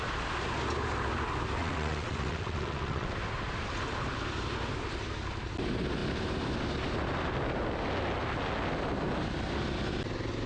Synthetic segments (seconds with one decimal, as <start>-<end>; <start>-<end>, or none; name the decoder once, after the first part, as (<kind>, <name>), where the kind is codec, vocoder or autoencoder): 1.6-3.1 (vocoder, WaveNeXt)